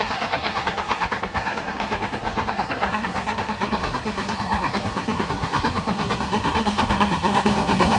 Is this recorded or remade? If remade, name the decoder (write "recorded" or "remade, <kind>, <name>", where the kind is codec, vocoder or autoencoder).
remade, codec, SNAC